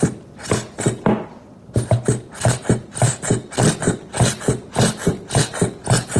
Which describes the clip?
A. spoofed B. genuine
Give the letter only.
B